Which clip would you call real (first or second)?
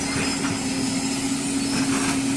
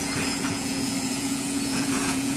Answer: first